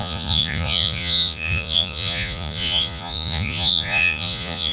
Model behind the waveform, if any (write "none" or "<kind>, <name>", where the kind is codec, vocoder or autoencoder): vocoder, Vocos